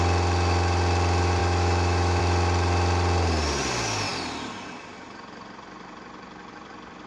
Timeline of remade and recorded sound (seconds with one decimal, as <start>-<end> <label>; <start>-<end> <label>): 0.0-1.4 recorded; 1.4-2.2 remade; 2.2-7.1 recorded